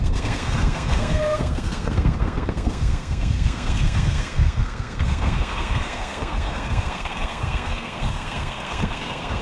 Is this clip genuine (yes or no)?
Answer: no